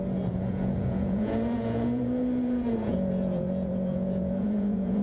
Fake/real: fake